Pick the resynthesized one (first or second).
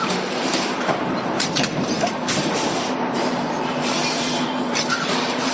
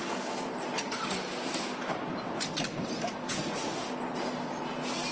first